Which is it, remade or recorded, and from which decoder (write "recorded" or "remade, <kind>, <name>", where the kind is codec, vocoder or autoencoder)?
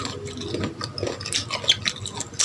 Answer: recorded